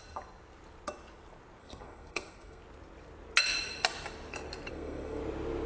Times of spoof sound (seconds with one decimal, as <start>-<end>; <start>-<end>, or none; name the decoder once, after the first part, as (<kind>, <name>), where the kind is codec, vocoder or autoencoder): 1.6-2.6 (codec, SNAC); 4.7-5.2